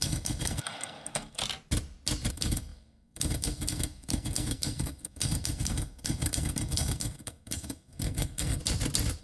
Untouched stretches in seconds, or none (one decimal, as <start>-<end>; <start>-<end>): 1.4-2.3; 8.6-9.2